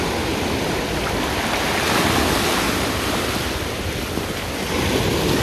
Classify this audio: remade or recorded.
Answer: recorded